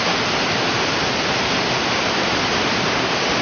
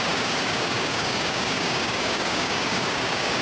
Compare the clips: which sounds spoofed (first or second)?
second